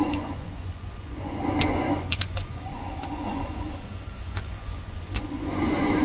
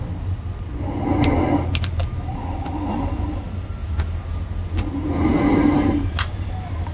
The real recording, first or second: second